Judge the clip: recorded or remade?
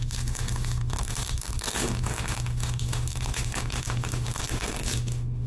remade